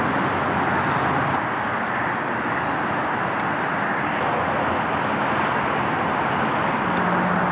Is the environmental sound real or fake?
real